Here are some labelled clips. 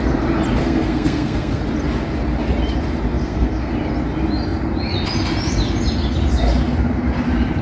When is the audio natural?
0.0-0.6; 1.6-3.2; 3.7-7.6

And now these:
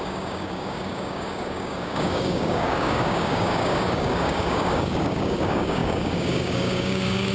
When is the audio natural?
none

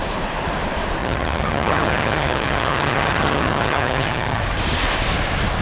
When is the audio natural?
0.0-1.0; 4.4-5.6

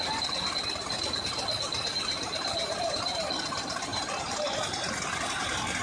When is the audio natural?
0.0-1.7; 3.2-3.9; 4.9-5.8